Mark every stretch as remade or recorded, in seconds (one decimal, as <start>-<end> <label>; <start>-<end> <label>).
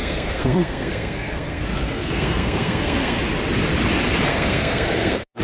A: 0.0-3.2 remade; 3.2-4.3 recorded; 4.3-5.4 remade